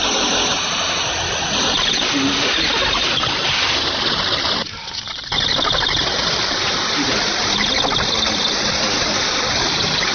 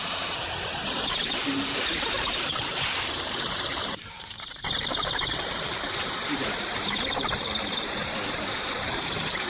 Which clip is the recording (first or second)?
first